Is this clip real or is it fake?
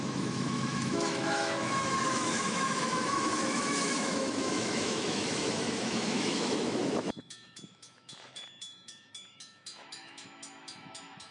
fake